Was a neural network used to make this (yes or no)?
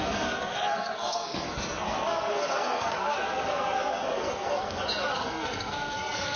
yes